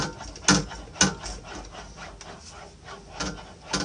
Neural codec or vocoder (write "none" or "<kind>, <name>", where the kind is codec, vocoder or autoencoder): none